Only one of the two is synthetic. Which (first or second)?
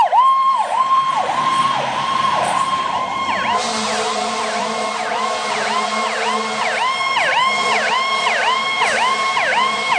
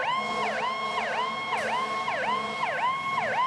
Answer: first